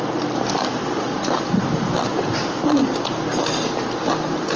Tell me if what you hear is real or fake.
real